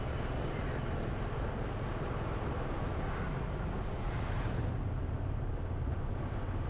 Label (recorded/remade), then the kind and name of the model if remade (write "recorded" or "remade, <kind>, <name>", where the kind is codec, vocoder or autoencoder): recorded